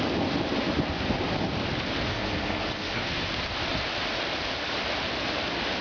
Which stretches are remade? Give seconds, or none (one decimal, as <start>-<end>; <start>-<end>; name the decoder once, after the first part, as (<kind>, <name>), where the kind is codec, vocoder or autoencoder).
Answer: 2.1-3.0 (codec, SNAC)